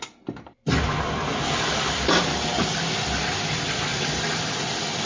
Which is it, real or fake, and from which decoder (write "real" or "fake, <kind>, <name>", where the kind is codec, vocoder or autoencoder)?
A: real